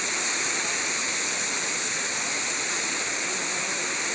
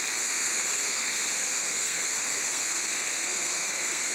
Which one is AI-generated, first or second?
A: second